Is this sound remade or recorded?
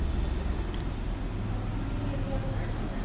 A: recorded